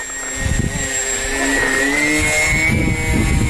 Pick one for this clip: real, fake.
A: real